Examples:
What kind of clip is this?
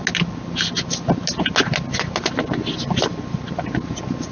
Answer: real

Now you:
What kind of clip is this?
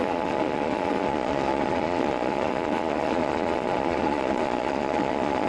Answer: fake